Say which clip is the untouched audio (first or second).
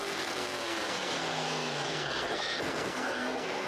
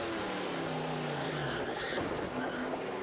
second